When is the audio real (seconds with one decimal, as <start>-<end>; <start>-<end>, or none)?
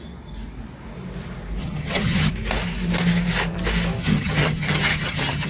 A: 0.0-1.6; 2.3-4.0